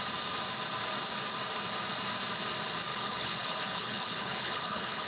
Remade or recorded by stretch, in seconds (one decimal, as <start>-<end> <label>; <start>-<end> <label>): 0.0-2.9 recorded; 2.9-5.1 remade